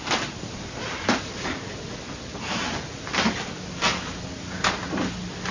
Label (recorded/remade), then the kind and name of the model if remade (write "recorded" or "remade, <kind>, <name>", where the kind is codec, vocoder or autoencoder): recorded